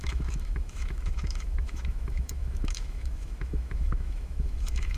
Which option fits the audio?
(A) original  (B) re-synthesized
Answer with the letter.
B